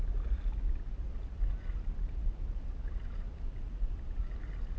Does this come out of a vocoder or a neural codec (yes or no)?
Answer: no